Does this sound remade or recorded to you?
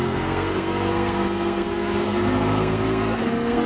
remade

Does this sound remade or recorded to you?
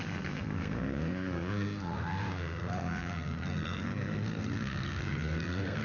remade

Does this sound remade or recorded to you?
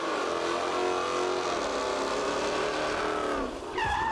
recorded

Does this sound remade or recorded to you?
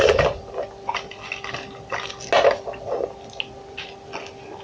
recorded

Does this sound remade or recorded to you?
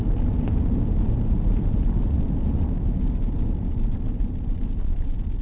recorded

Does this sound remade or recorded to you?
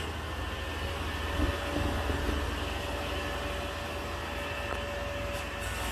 recorded